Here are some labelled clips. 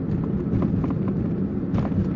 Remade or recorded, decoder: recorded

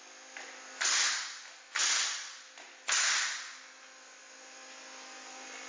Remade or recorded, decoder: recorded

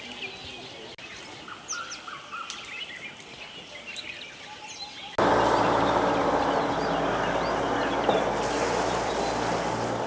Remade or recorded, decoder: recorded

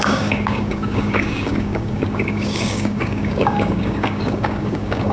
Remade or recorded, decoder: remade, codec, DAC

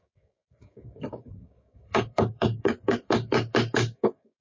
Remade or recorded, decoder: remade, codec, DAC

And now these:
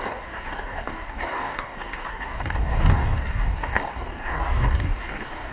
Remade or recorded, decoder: remade, codec, DAC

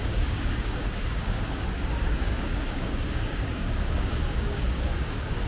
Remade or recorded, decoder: remade, codec, DAC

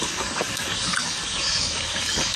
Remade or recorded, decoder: remade, codec, DAC